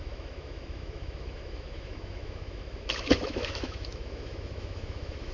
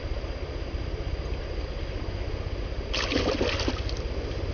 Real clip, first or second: second